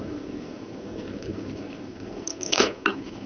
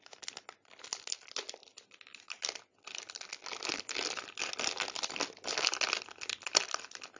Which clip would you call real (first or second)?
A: second